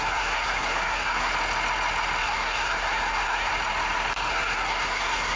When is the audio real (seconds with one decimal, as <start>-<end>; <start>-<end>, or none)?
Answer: 1.3-2.2; 3.5-4.3